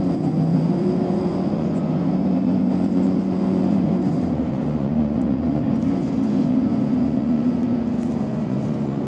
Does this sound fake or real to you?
fake